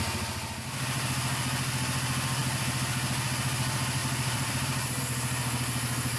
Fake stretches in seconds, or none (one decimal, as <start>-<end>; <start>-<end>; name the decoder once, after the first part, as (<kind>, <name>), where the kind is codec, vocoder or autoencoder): 4.0-5.0 (vocoder, BigVGAN v2)